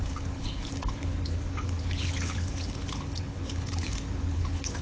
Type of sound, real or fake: fake